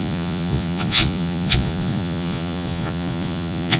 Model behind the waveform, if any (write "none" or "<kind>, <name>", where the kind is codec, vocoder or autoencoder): vocoder, Vocos